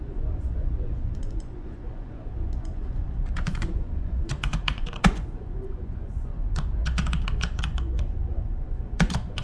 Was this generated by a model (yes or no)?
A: yes